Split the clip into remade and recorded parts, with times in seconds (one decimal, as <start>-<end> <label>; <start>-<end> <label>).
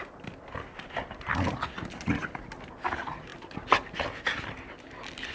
0.0-5.3 recorded